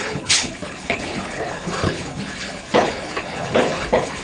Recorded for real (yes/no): no